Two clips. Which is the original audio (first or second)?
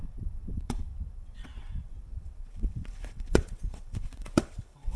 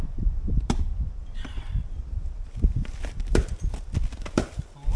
second